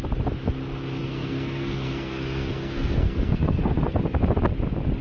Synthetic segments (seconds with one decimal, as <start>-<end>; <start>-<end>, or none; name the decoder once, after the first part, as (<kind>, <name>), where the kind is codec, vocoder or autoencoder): 1.0-4.0 (codec, SNAC)